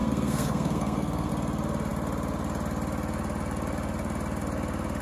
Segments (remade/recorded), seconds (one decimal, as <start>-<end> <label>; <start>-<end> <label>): 0.0-1.3 remade; 1.3-5.0 recorded

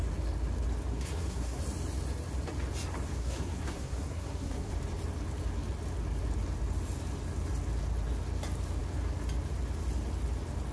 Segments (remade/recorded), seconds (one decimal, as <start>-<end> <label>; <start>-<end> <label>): 0.0-0.9 recorded; 0.9-1.6 remade; 1.6-3.2 recorded; 3.2-4.7 remade; 4.7-10.7 recorded

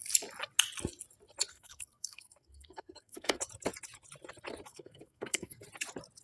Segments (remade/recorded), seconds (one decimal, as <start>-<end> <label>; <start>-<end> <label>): 0.0-1.5 recorded; 1.5-3.4 remade; 3.4-4.7 recorded; 4.7-5.6 remade; 5.6-6.2 recorded

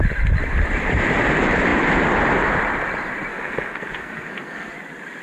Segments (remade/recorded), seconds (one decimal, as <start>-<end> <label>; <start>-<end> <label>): 0.0-3.3 recorded; 3.3-4.7 remade; 4.7-5.2 recorded

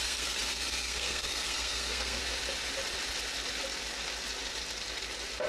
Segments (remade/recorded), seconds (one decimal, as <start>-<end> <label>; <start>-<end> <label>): 0.0-2.2 remade; 2.2-5.5 recorded

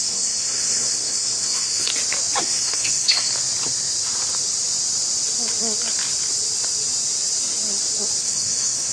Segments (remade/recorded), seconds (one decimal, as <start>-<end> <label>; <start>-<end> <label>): 0.0-1.9 remade; 1.9-2.4 recorded; 2.4-3.3 remade; 3.3-8.2 recorded; 8.2-8.9 remade